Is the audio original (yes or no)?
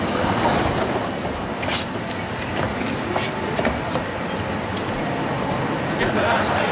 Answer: yes